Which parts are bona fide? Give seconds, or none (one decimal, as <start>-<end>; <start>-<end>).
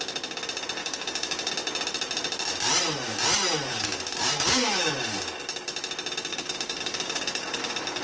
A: 0.0-0.8; 1.5-3.7; 4.9-6.3; 7.6-8.0